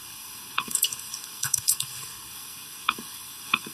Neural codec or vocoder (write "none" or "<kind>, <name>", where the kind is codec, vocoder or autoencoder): codec, SNAC